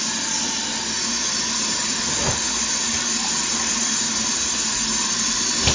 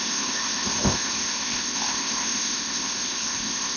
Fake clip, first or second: second